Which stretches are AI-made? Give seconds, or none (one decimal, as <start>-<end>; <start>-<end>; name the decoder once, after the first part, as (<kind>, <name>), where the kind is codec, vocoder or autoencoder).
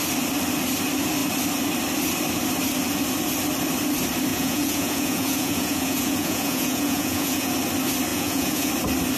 4.3-7.5 (vocoder, Vocos); 8.1-8.7